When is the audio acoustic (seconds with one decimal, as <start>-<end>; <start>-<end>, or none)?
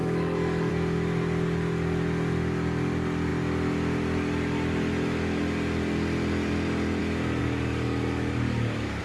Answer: 0.7-7.4